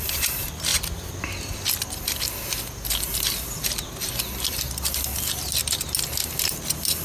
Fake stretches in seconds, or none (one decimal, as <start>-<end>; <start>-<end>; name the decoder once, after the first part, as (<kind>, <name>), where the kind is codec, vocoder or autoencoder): 0.0-0.7 (vocoder, BigVGAN v2); 4.5-5.6